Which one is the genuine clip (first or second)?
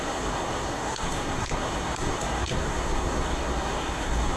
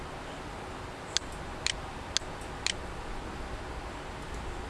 second